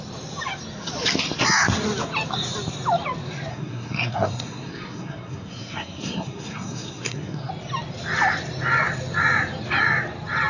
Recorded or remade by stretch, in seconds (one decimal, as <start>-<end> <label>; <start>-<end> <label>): 0.0-3.5 recorded; 3.5-7.5 remade; 7.5-10.5 recorded